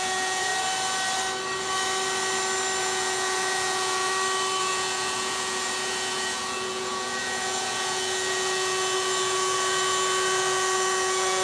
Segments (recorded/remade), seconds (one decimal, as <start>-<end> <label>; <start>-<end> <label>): 0.0-0.5 remade; 0.5-2.8 recorded; 2.8-4.1 remade; 4.1-4.6 recorded; 4.6-11.4 remade